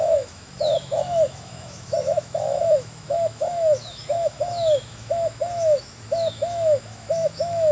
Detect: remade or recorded remade